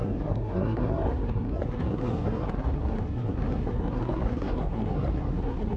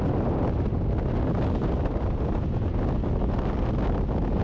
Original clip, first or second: second